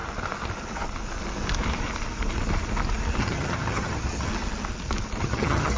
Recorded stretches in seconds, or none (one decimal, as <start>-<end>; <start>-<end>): 0.0-3.2; 4.3-5.2

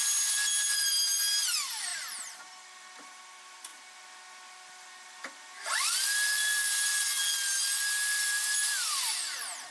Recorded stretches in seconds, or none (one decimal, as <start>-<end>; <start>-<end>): 0.0-9.7

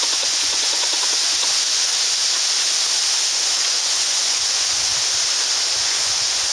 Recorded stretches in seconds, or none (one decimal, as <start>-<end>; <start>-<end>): 1.9-3.3; 4.9-5.8

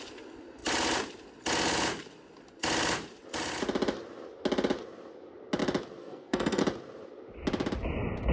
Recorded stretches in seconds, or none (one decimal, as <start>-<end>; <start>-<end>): 0.0-6.0; 6.6-8.3

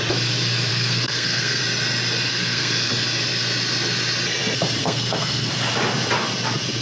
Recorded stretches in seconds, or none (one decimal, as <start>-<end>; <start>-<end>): 0.0-0.7; 1.6-2.3; 2.9-4.8; 5.5-6.8

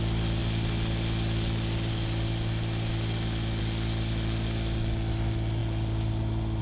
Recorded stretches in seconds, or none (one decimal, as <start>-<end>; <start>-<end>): 0.0-6.6